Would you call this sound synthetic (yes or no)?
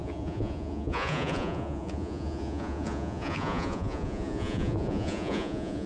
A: yes